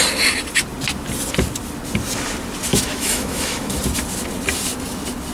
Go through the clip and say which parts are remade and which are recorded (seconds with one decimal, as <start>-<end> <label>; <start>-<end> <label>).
0.0-2.7 recorded; 2.7-3.8 remade; 3.8-5.3 recorded